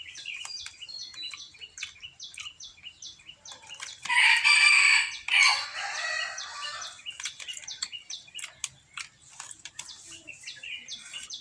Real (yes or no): yes